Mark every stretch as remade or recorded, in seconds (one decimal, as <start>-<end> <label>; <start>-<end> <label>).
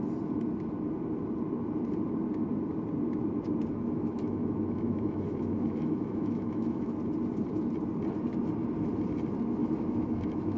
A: 0.0-3.7 recorded; 3.7-6.9 remade; 6.9-9.6 recorded; 9.6-10.6 remade